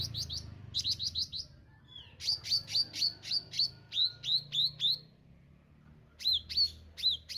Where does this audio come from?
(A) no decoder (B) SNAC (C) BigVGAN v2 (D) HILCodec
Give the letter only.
A